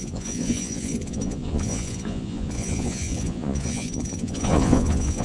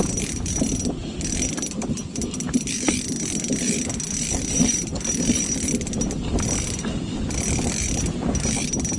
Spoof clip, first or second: first